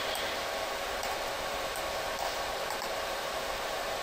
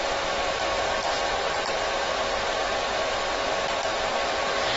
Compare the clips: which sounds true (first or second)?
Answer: second